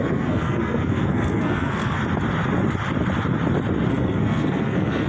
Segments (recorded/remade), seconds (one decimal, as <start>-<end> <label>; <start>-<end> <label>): 0.0-2.0 remade; 2.0-3.9 recorded; 3.9-5.1 remade